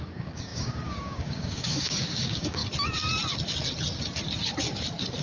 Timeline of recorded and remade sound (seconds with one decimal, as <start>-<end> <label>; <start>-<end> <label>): 0.0-2.6 remade; 2.6-5.2 recorded